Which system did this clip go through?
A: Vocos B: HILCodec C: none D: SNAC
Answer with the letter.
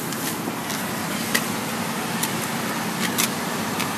C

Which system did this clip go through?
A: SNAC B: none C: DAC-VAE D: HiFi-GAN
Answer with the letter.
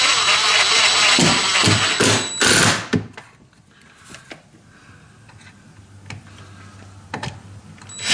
B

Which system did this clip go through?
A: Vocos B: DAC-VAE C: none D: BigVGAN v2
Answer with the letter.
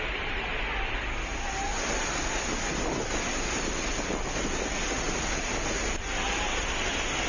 C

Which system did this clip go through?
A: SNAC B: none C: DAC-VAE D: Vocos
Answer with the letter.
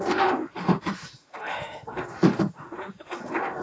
C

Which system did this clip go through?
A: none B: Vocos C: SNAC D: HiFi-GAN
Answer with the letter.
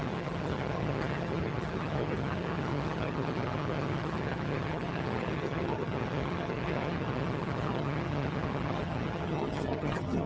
D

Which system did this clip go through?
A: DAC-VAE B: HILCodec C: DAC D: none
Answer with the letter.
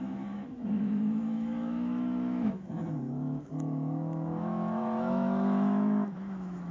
A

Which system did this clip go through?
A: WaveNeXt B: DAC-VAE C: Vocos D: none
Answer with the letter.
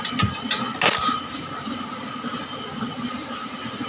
D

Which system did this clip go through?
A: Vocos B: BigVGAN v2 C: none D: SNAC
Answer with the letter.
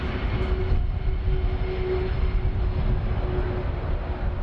C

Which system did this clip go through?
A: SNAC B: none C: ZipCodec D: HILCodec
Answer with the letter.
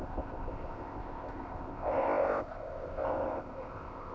C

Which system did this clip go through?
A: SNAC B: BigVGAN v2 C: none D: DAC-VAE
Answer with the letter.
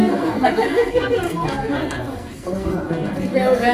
A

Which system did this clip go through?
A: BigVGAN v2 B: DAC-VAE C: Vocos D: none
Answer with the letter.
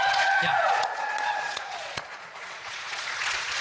C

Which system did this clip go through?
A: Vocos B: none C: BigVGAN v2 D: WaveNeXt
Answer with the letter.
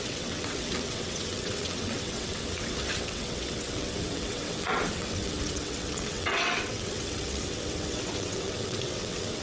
D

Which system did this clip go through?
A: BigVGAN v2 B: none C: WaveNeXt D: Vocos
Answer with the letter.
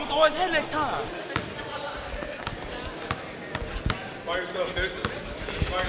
B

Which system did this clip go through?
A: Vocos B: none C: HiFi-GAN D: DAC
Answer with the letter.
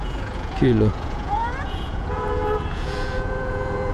A